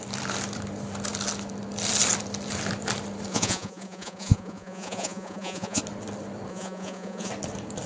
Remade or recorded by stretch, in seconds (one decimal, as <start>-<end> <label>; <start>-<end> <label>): 0.0-3.3 recorded; 3.3-5.8 remade; 5.8-6.5 recorded; 6.5-7.3 remade; 7.3-7.9 recorded